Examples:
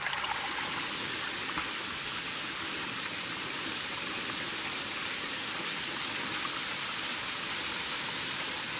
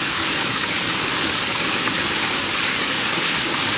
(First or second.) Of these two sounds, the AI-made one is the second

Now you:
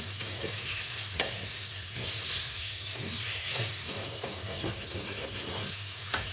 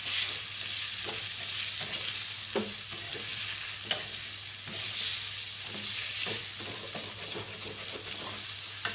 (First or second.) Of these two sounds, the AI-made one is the first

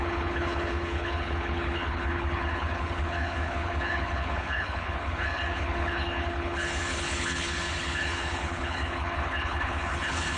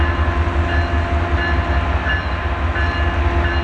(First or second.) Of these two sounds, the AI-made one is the first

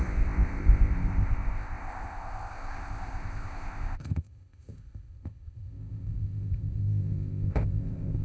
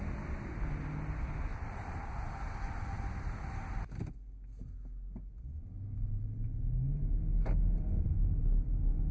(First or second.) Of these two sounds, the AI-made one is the first